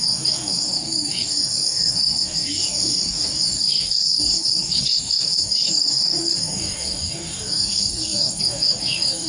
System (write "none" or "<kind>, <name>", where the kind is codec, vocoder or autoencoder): codec, DAC